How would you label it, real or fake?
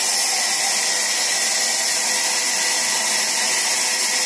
real